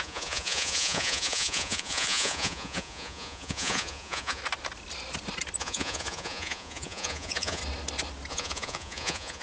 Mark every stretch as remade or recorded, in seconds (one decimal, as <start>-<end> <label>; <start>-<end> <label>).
0.0-4.4 remade; 4.4-5.6 recorded; 5.6-7.6 remade; 7.6-8.3 recorded; 8.3-9.4 remade